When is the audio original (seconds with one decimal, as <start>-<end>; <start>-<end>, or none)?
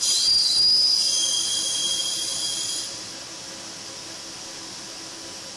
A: 0.0-1.8; 3.1-5.6